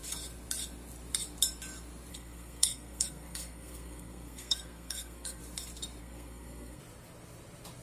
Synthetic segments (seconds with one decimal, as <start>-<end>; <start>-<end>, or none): 2.1-5.4; 6.0-6.8